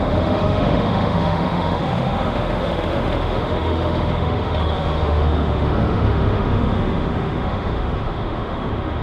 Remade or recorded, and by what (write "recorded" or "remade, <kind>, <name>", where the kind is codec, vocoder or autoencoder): remade, autoencoder, DAC-VAE